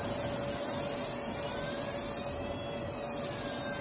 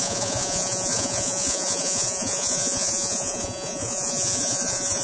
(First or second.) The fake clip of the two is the second